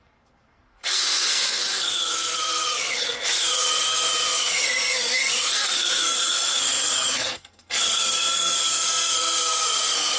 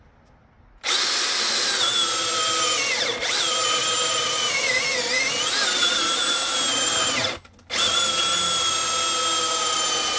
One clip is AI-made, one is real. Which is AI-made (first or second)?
first